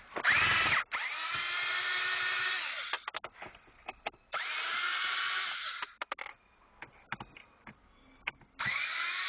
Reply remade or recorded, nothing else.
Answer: recorded